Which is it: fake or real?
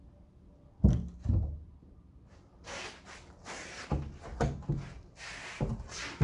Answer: real